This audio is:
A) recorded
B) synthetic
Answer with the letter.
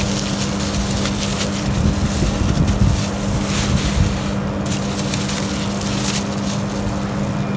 A